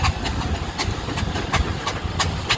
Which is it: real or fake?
real